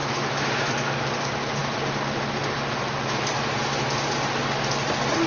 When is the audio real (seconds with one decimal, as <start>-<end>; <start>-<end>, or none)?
0.7-5.3